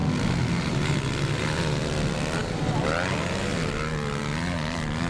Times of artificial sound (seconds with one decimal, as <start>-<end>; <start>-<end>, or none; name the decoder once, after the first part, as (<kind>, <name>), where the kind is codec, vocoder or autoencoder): none